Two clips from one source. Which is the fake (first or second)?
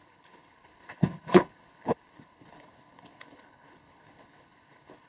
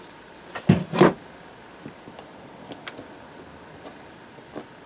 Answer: first